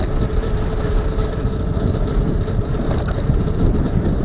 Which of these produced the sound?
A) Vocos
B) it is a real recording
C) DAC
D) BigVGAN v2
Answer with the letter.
D